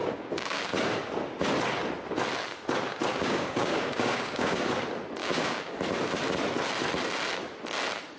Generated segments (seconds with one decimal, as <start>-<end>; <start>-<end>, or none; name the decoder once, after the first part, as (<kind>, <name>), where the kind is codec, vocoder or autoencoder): 0.0-0.6 (codec, DAC); 2.9-4.7; 5.2-5.8